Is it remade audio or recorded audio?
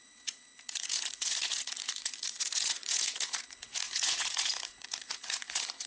remade